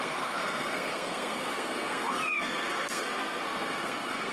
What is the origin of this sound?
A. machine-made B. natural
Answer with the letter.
A